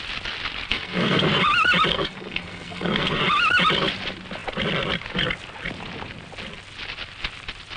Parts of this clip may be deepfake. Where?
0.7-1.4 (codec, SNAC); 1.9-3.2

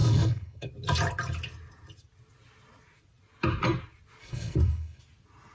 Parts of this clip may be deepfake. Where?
0.0-0.7 (codec, SNAC); 4.2-5.0